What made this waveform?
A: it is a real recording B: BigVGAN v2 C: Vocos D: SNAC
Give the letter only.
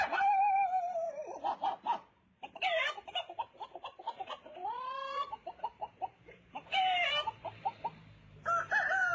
B